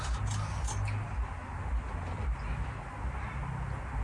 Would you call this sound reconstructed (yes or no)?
no